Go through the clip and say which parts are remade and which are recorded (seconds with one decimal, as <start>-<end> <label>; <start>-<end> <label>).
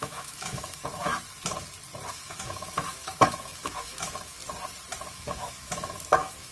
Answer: 0.0-1.1 remade; 1.1-2.1 recorded; 2.1-4.4 remade; 4.4-5.1 recorded; 5.1-6.5 remade